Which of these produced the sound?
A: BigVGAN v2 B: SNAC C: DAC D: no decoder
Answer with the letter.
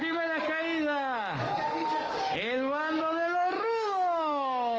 C